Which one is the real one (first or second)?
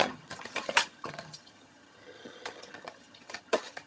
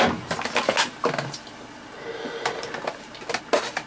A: second